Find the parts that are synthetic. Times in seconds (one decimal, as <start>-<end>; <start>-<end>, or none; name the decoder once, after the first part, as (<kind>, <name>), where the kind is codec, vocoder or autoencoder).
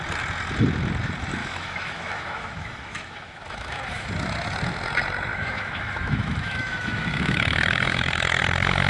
1.4-4.1 (autoencoder, DAC-VAE); 5.3-8.4